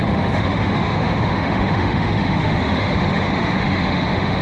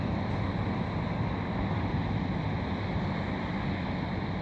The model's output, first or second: first